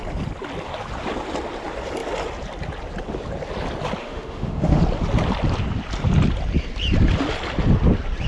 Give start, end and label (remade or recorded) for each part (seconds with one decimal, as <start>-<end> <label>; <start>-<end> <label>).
0.0-4.0 recorded; 4.0-4.8 remade; 4.8-8.3 recorded